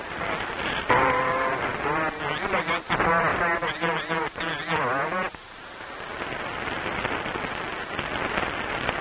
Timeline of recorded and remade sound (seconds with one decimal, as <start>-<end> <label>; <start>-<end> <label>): 0.0-9.0 recorded